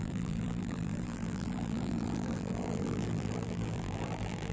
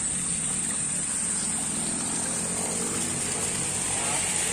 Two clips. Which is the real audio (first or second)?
second